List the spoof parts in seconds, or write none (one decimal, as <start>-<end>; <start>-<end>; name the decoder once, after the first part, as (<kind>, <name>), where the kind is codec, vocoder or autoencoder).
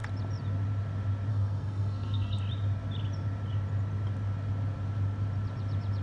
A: 1.3-2.4 (codec, SNAC)